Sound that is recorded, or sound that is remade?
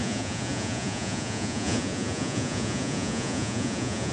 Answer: remade